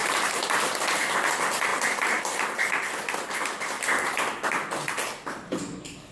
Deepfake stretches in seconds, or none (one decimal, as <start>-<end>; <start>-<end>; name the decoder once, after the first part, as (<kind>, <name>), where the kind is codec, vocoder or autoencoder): 0.0-0.9 (vocoder, BigVGAN v2); 1.7-2.7